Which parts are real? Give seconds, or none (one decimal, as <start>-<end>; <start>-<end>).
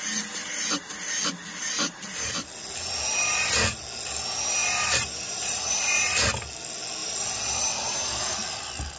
0.0-1.6; 2.3-4.6; 5.7-7.0; 7.6-9.0